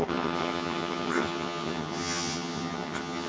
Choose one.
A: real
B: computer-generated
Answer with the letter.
B